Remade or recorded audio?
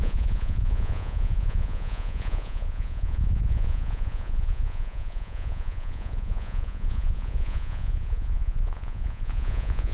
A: remade